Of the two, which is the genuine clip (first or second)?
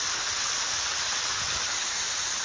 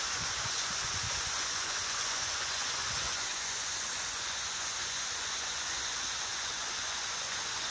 first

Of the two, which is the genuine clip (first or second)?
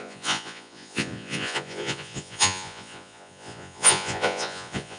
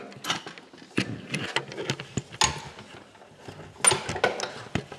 second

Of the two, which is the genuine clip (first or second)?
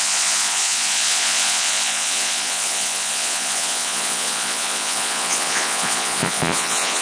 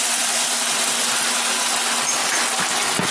second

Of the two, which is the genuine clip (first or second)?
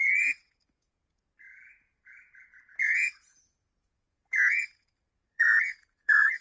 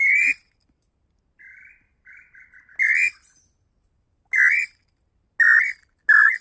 second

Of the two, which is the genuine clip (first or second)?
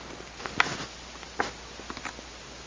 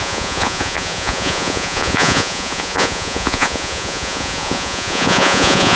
first